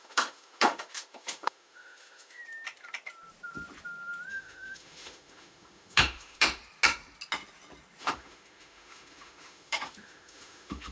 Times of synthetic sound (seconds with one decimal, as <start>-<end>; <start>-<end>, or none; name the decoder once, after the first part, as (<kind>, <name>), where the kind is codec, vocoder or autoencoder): 0.0-2.4 (autoencoder, DAC-VAE); 4.3-6.6; 8.0-10.9